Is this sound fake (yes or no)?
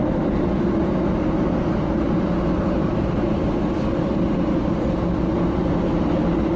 no